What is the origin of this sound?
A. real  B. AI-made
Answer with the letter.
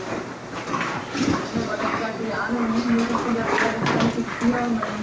A